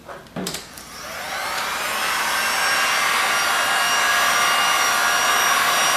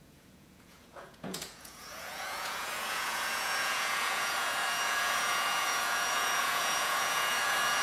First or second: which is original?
first